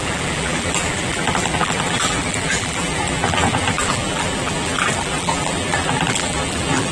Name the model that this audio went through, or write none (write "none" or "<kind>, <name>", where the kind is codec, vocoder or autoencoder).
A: vocoder, BigVGAN v2